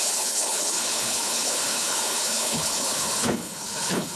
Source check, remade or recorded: remade